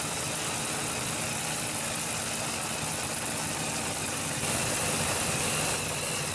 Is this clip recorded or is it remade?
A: recorded